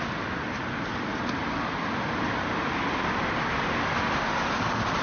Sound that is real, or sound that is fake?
real